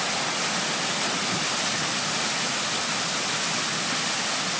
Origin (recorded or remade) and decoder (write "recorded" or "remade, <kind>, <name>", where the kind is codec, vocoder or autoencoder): recorded